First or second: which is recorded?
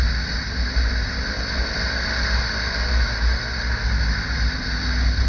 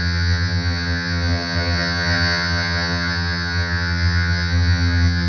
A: first